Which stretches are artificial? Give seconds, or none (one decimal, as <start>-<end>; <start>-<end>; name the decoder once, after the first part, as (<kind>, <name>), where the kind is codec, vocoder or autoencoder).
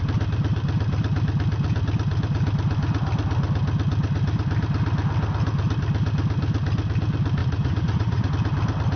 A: 7.4-8.3 (vocoder, Vocos)